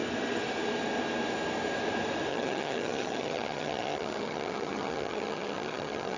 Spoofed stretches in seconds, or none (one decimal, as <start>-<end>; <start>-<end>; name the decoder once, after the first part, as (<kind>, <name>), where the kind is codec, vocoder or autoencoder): 2.3-6.2 (vocoder, HiFi-GAN)